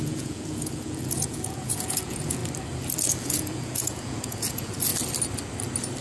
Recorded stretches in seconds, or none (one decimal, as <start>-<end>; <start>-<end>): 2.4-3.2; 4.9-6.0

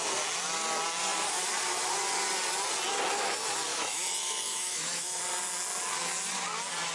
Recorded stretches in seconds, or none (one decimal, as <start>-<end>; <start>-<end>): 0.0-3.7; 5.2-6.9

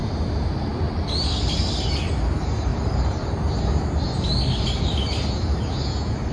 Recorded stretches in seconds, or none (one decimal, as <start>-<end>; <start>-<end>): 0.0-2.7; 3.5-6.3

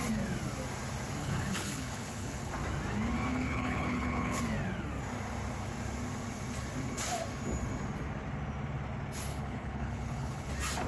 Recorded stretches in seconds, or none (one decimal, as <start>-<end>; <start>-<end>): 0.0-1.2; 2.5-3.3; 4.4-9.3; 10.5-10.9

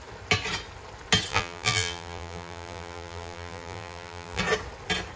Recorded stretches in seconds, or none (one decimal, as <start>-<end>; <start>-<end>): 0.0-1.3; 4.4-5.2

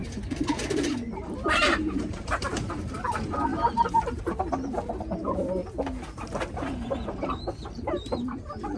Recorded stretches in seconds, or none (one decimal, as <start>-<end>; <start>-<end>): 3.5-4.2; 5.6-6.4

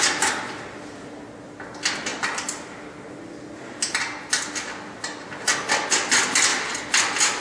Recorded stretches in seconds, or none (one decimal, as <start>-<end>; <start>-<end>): 0.0-7.4